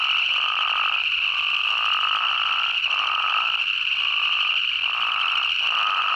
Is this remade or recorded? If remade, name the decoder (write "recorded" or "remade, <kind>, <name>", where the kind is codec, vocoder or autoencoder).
recorded